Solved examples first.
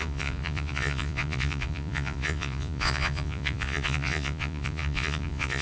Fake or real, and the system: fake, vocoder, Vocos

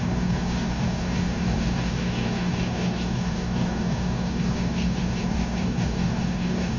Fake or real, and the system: fake, codec, DAC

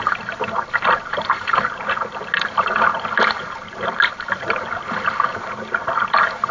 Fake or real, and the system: real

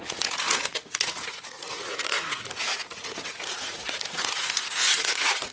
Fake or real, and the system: fake, vocoder, Vocos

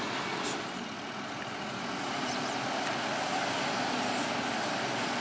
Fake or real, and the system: real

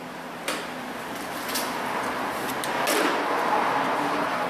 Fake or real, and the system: real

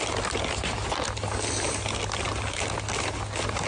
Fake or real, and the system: real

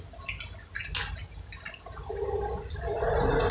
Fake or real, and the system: real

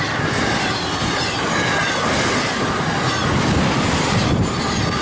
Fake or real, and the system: real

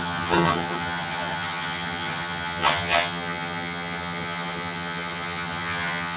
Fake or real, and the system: fake, vocoder, HiFi-GAN